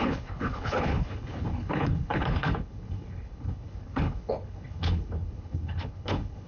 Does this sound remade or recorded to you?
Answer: remade